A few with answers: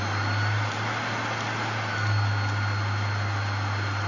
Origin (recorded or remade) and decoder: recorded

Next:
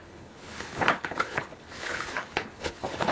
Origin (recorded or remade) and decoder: remade, codec, HILCodec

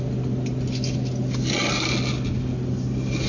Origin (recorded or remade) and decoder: recorded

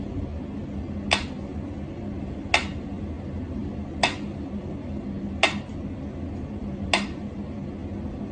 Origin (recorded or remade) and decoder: recorded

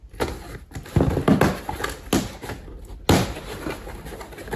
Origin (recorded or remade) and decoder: recorded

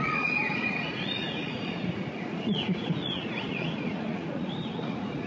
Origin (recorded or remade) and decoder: remade, vocoder, Vocos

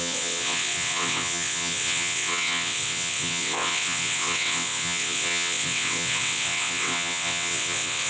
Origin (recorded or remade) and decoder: remade, vocoder, WaveNeXt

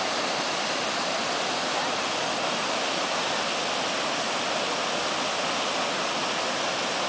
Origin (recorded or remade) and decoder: recorded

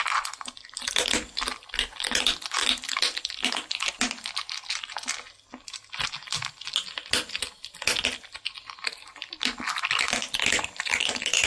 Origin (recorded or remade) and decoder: recorded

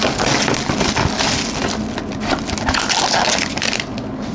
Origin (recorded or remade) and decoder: recorded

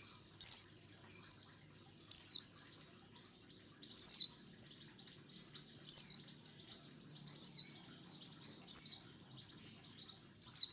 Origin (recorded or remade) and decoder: remade, vocoder, BigVGAN v2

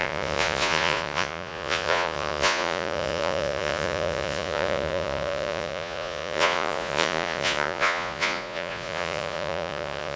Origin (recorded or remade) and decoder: remade, vocoder, Vocos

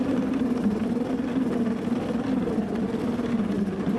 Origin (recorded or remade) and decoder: recorded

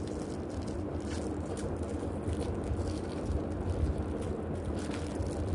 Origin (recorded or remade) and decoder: recorded